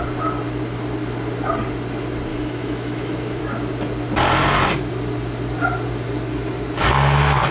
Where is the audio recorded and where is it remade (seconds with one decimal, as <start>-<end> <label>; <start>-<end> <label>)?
0.0-2.3 recorded; 2.3-3.4 remade; 3.4-7.5 recorded